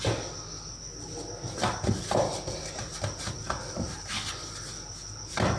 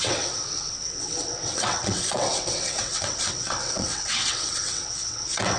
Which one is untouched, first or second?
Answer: first